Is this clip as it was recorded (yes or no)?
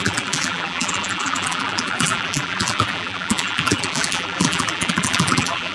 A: no